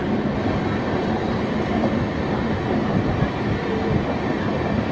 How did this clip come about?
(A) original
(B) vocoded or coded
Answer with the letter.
A